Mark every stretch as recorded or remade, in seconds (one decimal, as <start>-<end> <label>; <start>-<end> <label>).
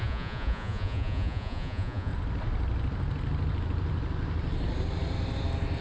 0.0-2.1 remade; 2.1-5.8 recorded